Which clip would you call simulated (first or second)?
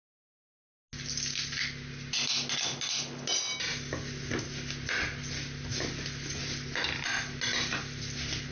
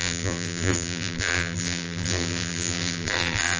second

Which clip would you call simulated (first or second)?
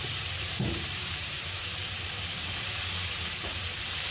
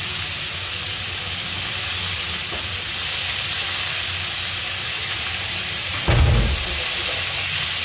first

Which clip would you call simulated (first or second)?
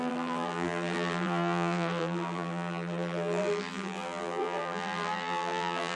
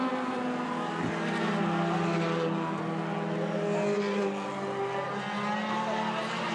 first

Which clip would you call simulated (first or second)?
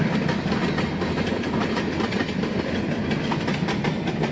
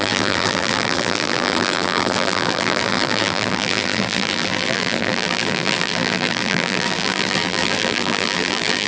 second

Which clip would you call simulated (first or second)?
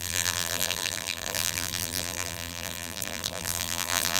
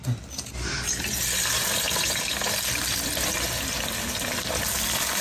first